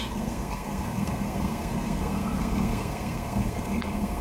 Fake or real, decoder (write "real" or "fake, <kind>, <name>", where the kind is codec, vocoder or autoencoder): fake, codec, SNAC